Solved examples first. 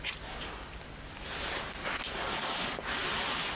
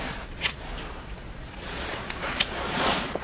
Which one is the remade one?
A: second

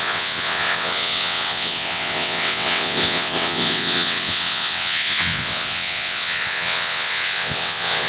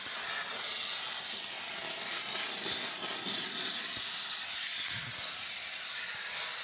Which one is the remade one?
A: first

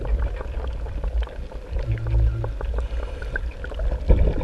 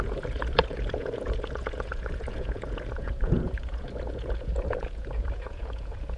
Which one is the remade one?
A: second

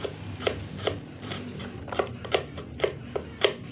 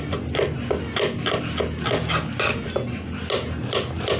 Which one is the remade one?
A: first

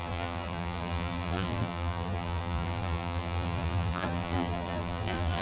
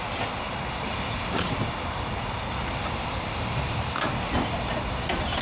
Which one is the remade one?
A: first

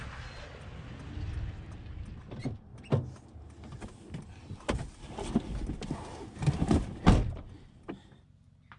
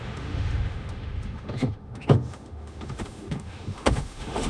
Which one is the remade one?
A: second